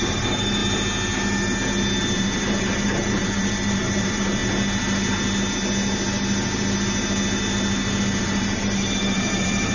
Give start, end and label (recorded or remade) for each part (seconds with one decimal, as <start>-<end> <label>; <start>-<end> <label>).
0.0-0.6 remade; 0.6-2.0 recorded; 2.0-4.4 remade; 4.4-8.2 recorded; 8.2-9.7 remade